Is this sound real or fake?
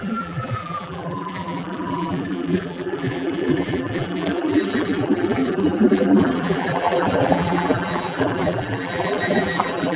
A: fake